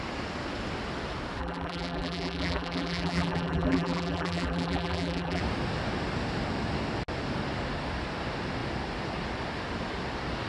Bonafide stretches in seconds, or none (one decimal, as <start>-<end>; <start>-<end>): 0.0-1.4; 5.4-10.5